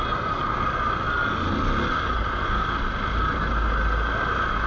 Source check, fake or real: real